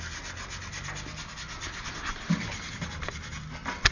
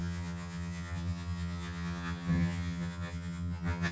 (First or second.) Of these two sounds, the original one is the first